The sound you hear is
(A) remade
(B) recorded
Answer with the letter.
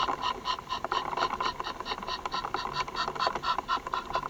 B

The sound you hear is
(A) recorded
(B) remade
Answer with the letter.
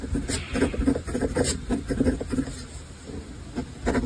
A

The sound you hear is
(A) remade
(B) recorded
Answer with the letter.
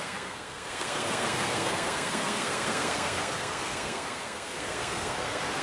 A